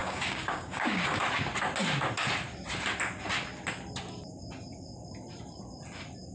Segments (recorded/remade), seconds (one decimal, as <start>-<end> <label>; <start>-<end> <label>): 0.0-1.2 remade; 1.2-6.3 recorded